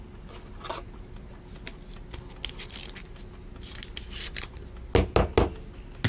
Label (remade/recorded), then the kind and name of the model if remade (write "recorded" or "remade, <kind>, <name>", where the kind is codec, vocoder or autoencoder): recorded